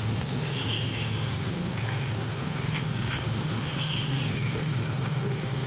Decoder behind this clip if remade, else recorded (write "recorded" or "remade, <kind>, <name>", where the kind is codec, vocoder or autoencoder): remade, autoencoder, DAC-VAE